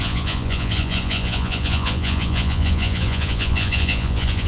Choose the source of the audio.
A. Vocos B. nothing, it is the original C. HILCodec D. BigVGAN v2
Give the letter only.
A